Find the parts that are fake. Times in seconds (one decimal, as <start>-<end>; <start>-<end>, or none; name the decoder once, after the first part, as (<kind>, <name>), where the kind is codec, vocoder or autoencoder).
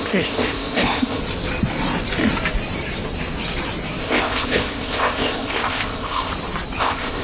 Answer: 0.0-1.2 (codec, ZipCodec); 4.0-6.3; 6.8-7.2